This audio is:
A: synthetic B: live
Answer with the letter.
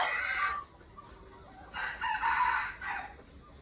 B